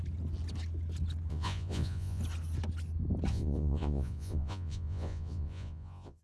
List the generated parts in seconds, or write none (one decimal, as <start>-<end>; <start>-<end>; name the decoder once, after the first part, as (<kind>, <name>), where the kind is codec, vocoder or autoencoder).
1.3-2.2 (vocoder, Vocos); 3.3-6.2